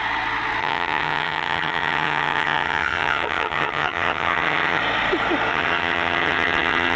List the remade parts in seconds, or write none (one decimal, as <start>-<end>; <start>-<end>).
0.6-4.8; 5.5-7.0